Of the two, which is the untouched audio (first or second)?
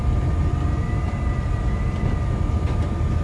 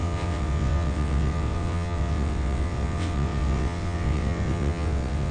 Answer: first